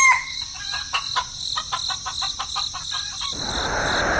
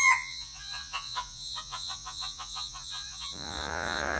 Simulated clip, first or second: second